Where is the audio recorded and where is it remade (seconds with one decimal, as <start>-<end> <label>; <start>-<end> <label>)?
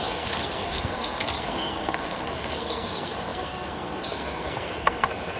0.0-5.4 remade